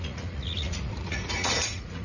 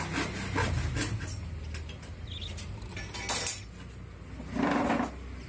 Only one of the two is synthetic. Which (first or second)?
first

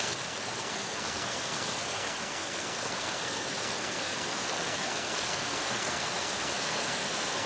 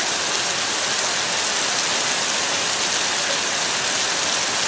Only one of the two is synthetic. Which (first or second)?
first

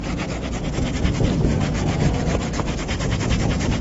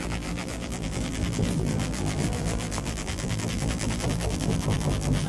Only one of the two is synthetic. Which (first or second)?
second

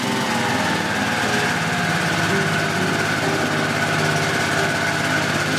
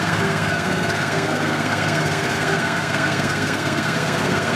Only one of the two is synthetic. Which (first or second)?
second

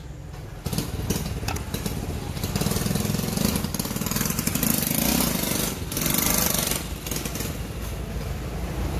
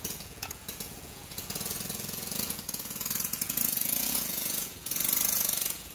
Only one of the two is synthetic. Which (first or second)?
second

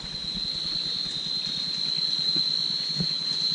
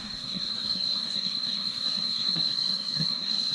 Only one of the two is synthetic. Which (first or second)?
second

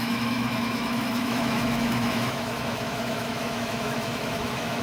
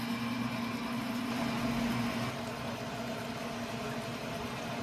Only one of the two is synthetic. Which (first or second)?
first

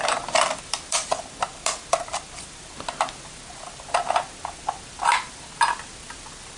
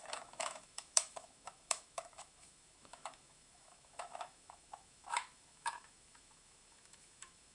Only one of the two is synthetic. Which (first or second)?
second